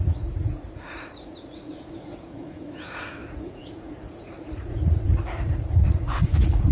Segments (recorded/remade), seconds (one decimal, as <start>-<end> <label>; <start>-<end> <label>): 0.0-6.7 remade